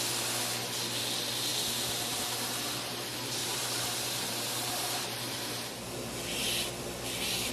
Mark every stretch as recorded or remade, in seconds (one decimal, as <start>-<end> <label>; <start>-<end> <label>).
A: 0.0-3.4 recorded; 3.4-6.4 remade; 6.4-7.5 recorded